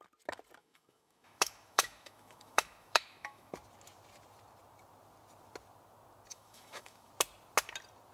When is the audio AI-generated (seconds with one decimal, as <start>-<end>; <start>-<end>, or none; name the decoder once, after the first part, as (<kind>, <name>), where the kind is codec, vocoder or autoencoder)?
0.6-3.5 (autoencoder, DAC-VAE); 6.3-7.1